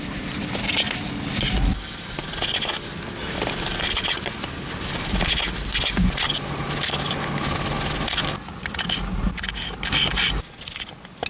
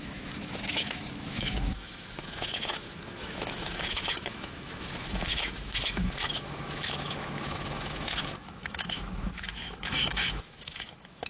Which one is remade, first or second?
second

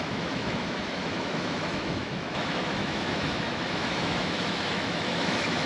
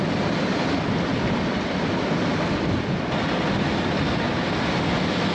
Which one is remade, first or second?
first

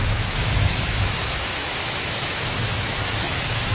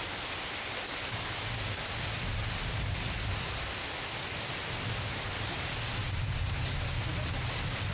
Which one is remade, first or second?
first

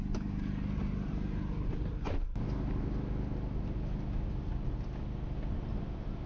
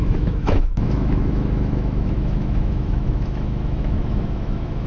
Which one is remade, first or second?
second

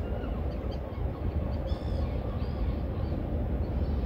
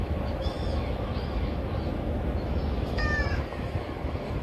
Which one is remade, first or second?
second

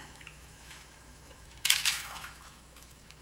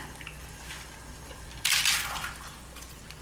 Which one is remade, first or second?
first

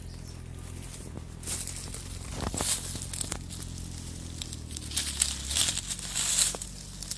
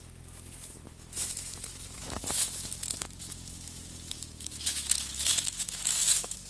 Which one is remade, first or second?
second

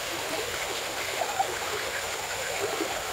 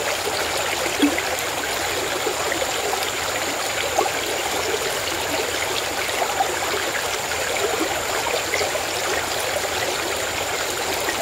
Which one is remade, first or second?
first